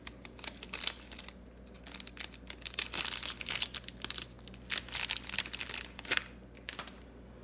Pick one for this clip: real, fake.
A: real